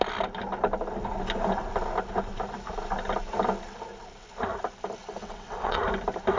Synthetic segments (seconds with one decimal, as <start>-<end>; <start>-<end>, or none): 5.2-5.8